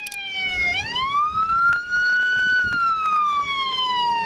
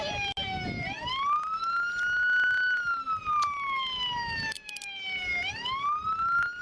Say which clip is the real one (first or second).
second